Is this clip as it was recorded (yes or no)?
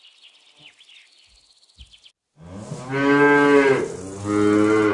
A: yes